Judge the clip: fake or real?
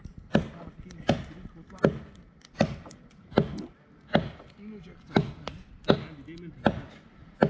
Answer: real